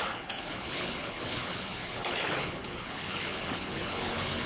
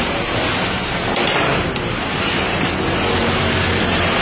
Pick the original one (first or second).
second